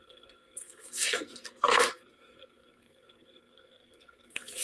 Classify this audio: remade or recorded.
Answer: remade